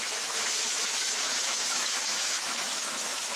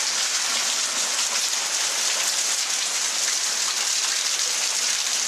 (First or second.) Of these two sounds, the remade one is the first